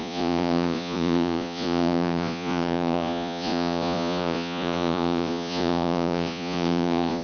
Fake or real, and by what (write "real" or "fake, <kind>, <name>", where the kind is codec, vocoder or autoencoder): fake, vocoder, Vocos